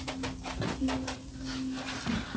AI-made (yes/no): no